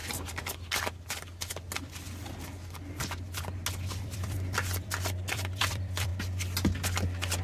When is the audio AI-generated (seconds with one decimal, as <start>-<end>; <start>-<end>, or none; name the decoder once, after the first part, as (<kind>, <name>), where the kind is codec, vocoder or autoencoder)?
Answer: 3.9-6.1 (vocoder, BigVGAN v2)